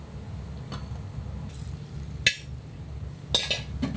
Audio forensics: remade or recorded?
recorded